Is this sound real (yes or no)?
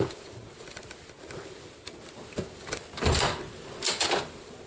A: yes